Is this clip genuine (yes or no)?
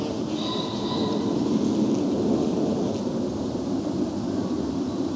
yes